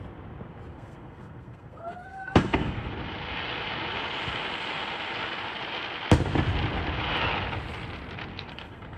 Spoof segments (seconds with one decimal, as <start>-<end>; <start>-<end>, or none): 0.7-2.9; 8.3-9.0